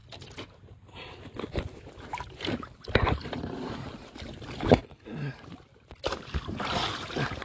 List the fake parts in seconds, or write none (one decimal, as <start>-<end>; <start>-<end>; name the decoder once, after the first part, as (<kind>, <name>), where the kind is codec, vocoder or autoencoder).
none